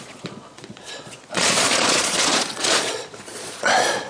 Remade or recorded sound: remade